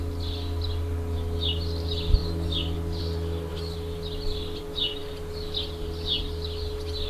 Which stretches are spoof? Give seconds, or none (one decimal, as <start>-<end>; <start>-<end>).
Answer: none